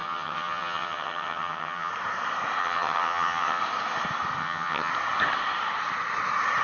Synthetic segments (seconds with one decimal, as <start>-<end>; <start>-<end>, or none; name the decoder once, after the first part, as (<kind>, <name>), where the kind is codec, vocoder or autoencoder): 0.0-1.9 (vocoder, HiFi-GAN); 2.6-3.6; 4.4-4.9

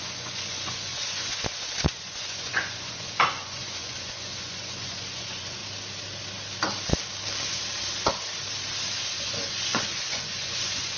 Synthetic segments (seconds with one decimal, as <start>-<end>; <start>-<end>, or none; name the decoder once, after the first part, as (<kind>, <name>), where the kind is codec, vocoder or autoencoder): 0.0-5.6 (vocoder, Vocos); 9.0-11.0

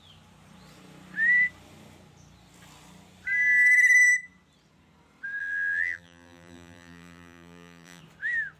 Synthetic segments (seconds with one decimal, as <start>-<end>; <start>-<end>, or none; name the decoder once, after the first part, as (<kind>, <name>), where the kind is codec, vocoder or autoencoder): 5.4-8.0 (vocoder, BigVGAN v2)

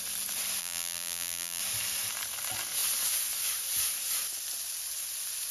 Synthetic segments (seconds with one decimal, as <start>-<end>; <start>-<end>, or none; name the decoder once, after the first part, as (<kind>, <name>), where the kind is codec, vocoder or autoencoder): 0.6-1.6 (vocoder, BigVGAN v2)

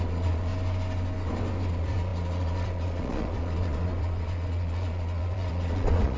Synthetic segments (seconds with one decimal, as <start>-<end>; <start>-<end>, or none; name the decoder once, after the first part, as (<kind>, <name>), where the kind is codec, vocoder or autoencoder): 0.0-0.5 (vocoder, Vocos); 1.7-6.2

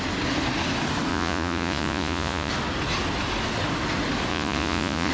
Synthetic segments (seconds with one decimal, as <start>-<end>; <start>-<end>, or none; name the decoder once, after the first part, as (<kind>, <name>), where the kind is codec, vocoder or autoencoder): 1.1-2.5 (vocoder, Vocos); 4.3-5.1

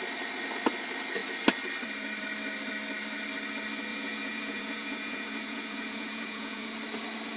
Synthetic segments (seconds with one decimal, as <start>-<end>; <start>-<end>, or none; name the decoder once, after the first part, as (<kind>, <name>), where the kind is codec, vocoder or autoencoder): 3.9-6.7 (vocoder, Vocos)